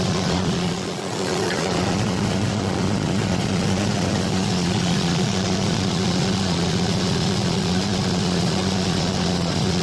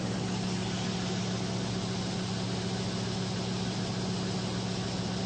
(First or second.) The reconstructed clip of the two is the first